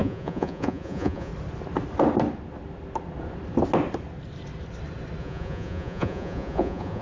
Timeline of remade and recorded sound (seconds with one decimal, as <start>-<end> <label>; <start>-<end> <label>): 0.0-1.3 remade; 1.3-5.2 recorded; 5.2-7.0 remade